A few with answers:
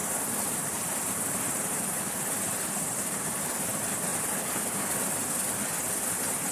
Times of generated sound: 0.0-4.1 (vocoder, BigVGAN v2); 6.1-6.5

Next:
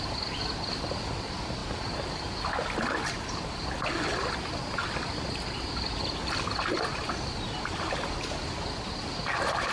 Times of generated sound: none

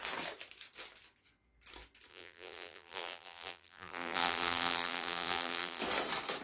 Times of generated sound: 2.1-5.8 (vocoder, BigVGAN v2)

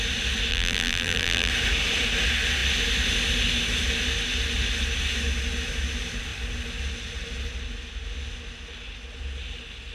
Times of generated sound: 0.5-1.5 (vocoder, BigVGAN v2)

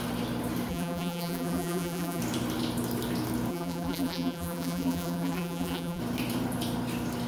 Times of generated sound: 0.7-2.2 (vocoder, BigVGAN v2); 3.5-6.0

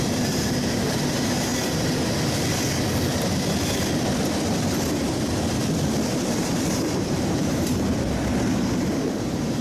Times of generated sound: 0.0-1.5 (vocoder, BigVGAN v2); 6.3-9.6